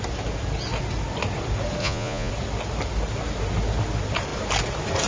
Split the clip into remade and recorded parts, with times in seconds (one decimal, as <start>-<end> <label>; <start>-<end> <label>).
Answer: 0.0-1.8 recorded; 1.8-2.3 remade; 2.3-5.1 recorded

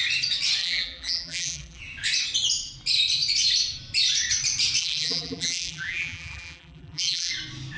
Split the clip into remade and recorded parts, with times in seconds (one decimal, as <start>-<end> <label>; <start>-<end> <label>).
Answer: 0.0-0.6 recorded; 0.6-1.8 remade; 1.8-4.8 recorded; 4.8-7.3 remade; 7.3-7.8 recorded

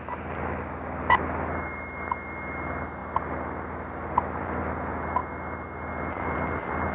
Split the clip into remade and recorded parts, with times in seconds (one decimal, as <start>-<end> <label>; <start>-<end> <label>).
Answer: 0.0-6.9 recorded

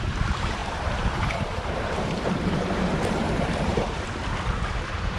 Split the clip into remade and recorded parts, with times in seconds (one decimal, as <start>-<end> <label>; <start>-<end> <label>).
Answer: 0.0-3.7 remade; 3.7-4.6 recorded; 4.6-5.2 remade

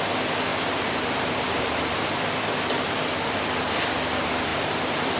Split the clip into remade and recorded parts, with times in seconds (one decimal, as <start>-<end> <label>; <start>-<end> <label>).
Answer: 0.0-0.5 recorded; 0.5-2.5 remade; 2.5-4.5 recorded; 4.5-5.2 remade

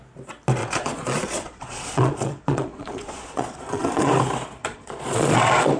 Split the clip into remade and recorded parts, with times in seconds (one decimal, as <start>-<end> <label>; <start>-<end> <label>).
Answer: 0.0-0.6 recorded; 0.6-4.1 remade; 4.1-4.6 recorded; 4.6-5.8 remade

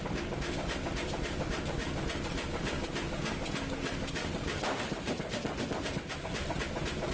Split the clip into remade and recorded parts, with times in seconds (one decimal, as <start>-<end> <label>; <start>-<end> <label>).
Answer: 0.0-4.2 recorded; 4.2-5.3 remade; 5.3-7.1 recorded

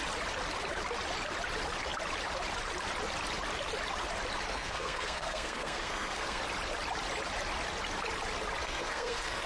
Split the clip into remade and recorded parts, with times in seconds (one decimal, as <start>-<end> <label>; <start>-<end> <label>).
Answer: 0.0-4.5 recorded; 4.5-6.4 remade; 6.4-8.6 recorded; 8.6-9.5 remade